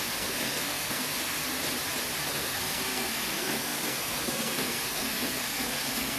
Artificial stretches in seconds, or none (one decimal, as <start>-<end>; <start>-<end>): 0.0-1.4; 2.3-6.2